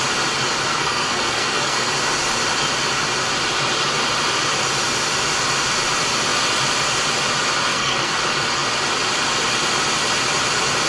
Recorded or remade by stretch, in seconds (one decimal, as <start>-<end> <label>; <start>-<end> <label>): 0.0-0.7 recorded; 0.7-1.9 remade; 1.9-7.7 recorded; 7.7-8.2 remade; 8.2-10.9 recorded